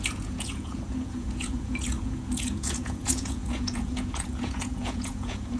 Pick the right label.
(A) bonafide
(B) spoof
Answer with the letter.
B